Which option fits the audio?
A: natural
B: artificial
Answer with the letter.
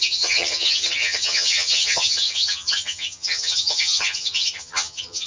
B